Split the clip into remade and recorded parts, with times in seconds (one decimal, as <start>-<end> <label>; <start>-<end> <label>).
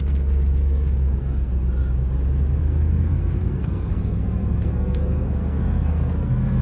0.0-1.5 remade; 1.5-2.6 recorded; 2.6-6.6 remade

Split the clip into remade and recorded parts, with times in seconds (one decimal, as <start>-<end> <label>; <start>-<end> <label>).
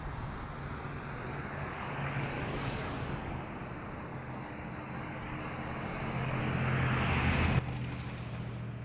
0.0-1.3 recorded; 1.3-3.4 remade; 3.4-4.1 recorded; 4.1-6.4 remade; 6.4-8.8 recorded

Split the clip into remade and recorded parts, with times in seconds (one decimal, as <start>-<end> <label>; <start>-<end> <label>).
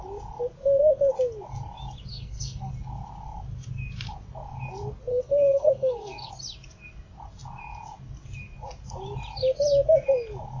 0.0-2.1 recorded; 2.1-2.7 remade; 2.7-5.1 recorded; 5.1-6.3 remade; 6.3-10.6 recorded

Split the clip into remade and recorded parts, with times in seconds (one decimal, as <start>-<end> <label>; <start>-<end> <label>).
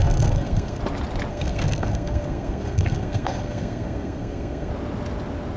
0.0-0.8 remade; 0.8-1.3 recorded; 1.3-4.7 remade; 4.7-5.6 recorded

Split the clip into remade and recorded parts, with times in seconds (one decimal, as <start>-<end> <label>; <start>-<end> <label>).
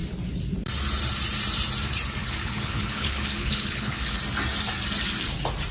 0.0-2.2 recorded; 2.2-4.2 remade; 4.2-5.7 recorded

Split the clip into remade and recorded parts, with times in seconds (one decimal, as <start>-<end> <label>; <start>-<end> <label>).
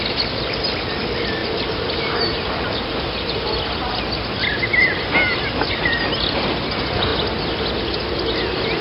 0.0-1.4 recorded; 1.4-2.9 remade; 2.9-8.8 recorded